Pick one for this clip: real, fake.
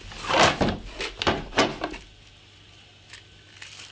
real